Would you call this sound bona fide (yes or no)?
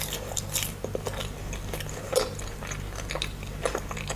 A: yes